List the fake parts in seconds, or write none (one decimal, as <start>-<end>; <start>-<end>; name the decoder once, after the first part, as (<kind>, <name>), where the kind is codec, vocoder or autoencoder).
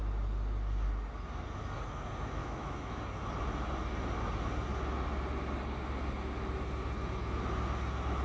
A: 2.4-3.0 (autoencoder, DAC-VAE)